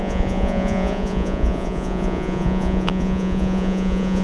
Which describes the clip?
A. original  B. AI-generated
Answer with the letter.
B